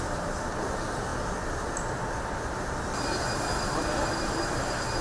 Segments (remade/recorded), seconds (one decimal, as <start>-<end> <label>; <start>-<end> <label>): 0.0-5.0 remade